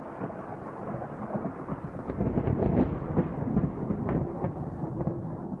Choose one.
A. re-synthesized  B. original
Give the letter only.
B